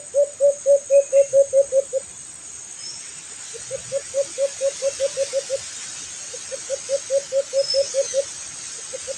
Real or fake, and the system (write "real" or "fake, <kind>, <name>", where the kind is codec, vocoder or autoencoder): real